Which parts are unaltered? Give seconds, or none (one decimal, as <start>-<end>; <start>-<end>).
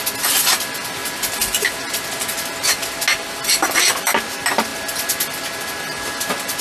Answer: 0.0-6.6